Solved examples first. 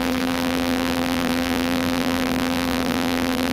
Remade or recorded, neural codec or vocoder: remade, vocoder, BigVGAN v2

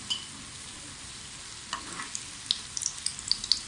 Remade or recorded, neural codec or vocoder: recorded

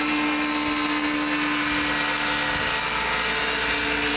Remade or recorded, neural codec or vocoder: recorded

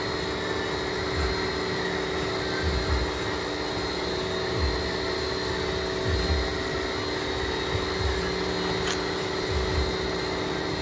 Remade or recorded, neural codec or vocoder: recorded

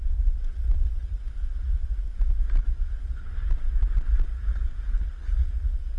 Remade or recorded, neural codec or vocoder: recorded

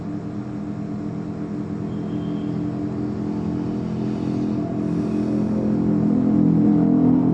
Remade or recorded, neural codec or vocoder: recorded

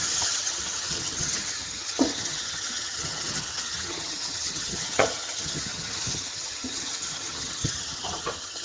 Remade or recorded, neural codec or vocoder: remade, vocoder, HiFi-GAN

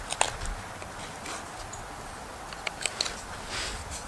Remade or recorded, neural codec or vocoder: recorded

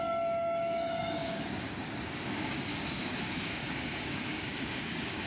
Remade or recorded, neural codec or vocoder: remade, codec, DAC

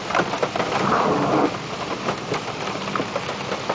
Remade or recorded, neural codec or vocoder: recorded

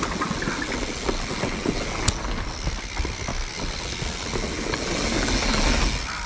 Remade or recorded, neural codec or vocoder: recorded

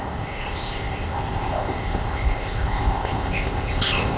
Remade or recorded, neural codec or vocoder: remade, codec, ZipCodec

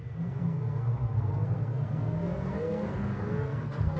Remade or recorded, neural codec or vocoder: remade, codec, SNAC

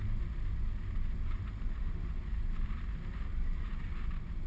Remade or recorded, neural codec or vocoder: recorded